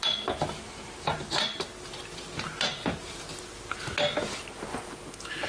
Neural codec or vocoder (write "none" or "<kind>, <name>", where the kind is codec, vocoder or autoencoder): none